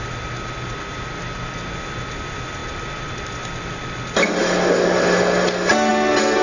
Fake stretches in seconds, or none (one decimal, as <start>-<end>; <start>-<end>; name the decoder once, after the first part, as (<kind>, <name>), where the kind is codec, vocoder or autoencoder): none